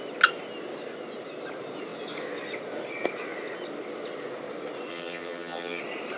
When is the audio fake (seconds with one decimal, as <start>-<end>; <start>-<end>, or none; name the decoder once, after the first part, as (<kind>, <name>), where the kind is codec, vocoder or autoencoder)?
4.9-5.8 (vocoder, HiFi-GAN)